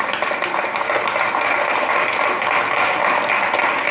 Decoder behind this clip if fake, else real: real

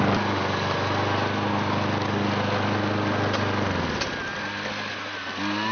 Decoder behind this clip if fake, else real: real